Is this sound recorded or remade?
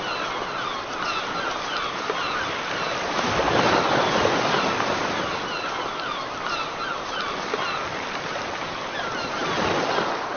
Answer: recorded